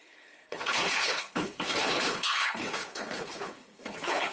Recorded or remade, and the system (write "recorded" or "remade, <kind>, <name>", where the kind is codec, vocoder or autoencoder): remade, codec, HILCodec